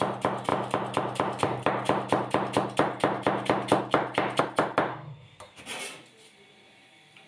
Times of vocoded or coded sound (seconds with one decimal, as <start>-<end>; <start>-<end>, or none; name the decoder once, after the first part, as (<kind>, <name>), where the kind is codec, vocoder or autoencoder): 4.9-5.6 (codec, SNAC)